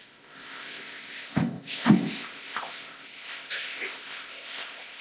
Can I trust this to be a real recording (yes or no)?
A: no